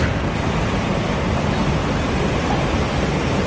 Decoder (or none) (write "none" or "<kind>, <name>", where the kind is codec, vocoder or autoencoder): none